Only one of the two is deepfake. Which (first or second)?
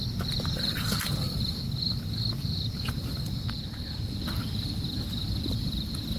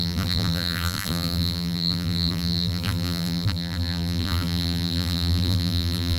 second